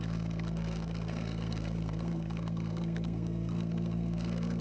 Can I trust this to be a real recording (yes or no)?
no